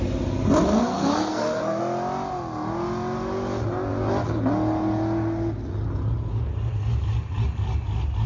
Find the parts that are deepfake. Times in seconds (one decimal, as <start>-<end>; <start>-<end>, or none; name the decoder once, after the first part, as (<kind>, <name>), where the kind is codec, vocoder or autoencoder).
0.8-1.8 (codec, SNAC)